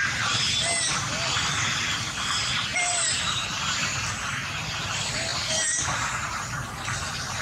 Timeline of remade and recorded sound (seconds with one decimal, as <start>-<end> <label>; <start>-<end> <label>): 0.0-2.7 recorded; 2.7-3.6 remade; 3.6-7.4 recorded